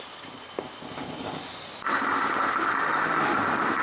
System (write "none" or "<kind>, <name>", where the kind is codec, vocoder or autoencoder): none